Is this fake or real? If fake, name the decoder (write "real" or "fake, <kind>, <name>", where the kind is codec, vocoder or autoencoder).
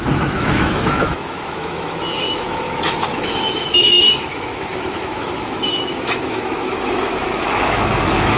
fake, autoencoder, DAC-VAE